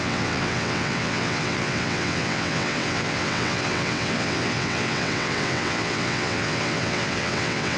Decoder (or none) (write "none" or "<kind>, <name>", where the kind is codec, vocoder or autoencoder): vocoder, WaveNeXt